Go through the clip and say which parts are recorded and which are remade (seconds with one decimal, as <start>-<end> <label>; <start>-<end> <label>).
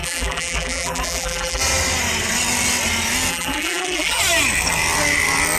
0.0-1.6 remade; 1.6-3.3 recorded; 3.3-4.2 remade; 4.2-5.6 recorded